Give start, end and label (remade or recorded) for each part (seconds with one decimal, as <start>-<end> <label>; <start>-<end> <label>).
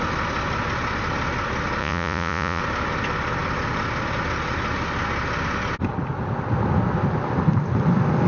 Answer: 0.0-1.8 recorded; 1.8-2.6 remade; 2.6-8.3 recorded